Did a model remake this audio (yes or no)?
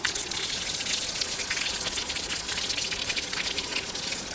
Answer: yes